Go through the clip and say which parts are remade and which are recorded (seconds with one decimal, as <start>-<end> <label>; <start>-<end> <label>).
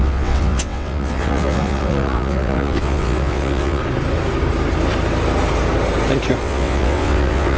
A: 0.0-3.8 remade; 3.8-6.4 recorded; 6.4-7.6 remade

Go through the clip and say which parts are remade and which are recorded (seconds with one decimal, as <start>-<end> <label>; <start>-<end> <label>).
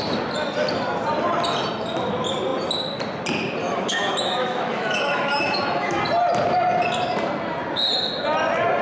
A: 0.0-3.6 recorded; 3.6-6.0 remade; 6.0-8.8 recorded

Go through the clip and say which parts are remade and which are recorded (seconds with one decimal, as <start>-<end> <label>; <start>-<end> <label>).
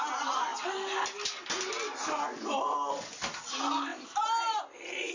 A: 0.0-3.9 recorded; 3.9-4.6 remade; 4.6-5.1 recorded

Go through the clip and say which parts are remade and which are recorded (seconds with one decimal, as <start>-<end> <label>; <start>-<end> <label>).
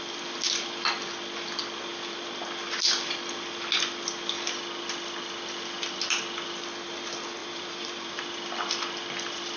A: 0.0-7.4 recorded; 7.4-8.2 remade; 8.2-9.6 recorded